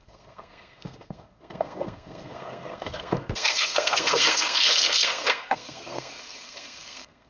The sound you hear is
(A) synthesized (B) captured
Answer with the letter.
A